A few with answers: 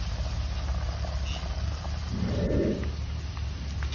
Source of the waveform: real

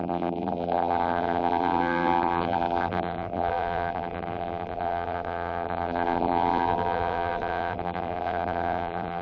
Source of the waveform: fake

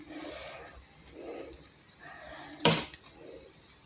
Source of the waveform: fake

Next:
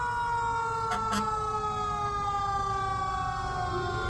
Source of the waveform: real